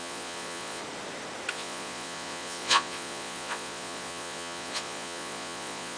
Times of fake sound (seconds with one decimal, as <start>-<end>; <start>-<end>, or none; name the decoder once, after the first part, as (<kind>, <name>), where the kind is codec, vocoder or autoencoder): 0.0-0.8 (vocoder, Vocos); 1.5-6.0